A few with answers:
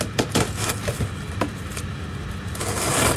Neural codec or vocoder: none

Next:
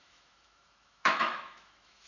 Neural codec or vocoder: autoencoder, DAC-VAE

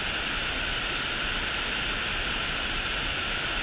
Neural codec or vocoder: none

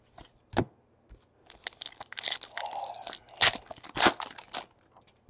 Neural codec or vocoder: none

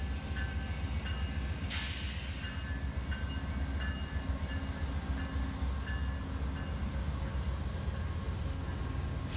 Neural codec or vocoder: none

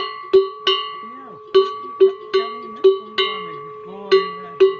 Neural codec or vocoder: none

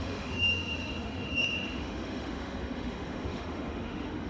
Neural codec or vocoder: autoencoder, DAC-VAE